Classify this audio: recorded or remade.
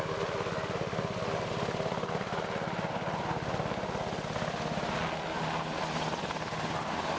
recorded